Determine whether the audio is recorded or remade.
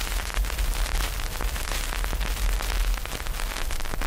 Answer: recorded